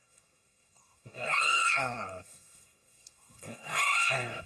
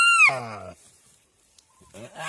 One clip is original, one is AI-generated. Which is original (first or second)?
second